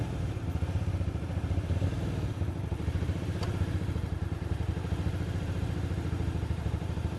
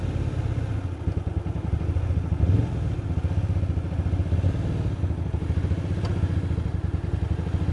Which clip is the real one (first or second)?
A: second